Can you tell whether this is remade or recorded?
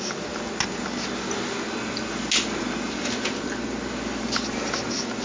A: recorded